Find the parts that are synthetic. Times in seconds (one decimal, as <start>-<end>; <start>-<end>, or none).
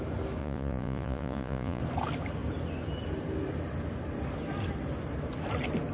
0.4-1.8